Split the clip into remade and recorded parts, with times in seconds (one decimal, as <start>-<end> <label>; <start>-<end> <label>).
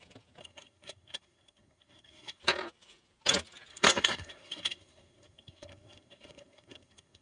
0.0-0.4 recorded; 0.4-2.4 remade; 2.4-3.7 recorded; 3.7-7.2 remade